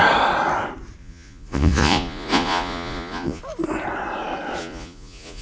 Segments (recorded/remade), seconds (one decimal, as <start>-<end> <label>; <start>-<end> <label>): 0.0-1.0 recorded; 1.0-3.4 remade; 3.4-4.6 recorded; 4.6-5.4 remade